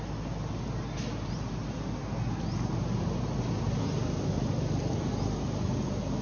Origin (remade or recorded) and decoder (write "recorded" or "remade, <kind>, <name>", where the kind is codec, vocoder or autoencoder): recorded